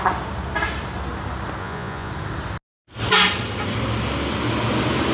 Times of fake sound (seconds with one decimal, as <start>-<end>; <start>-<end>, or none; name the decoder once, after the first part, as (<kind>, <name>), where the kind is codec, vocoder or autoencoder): 1.6-2.1 (vocoder, Vocos)